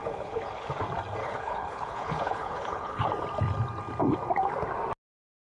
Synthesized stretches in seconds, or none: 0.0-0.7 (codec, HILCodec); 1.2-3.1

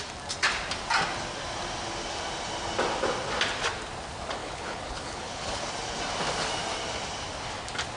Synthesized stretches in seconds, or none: 4.4-5.7 (codec, HILCodec)

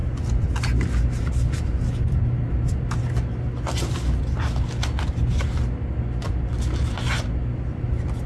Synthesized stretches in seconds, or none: none

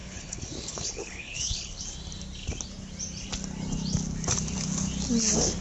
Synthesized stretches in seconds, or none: 0.0-1.8 (codec, HILCodec)

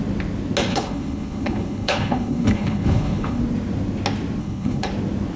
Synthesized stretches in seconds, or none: 0.7-3.4 (codec, HILCodec); 4.4-4.9

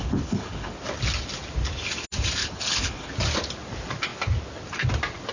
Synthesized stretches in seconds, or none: 0.0-0.8 (codec, HILCodec); 2.4-3.1